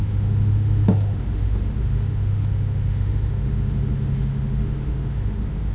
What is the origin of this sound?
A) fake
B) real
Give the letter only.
A